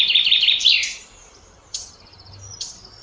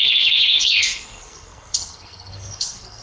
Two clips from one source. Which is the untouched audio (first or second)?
first